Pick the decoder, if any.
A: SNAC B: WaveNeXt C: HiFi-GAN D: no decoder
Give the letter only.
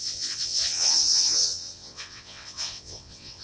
B